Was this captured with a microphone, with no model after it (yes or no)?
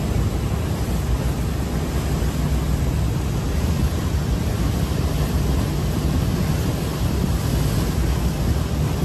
yes